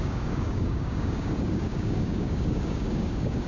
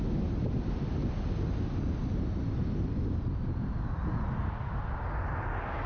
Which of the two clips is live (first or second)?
second